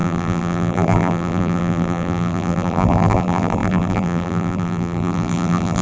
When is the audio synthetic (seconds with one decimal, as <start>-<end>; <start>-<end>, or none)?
0.0-5.8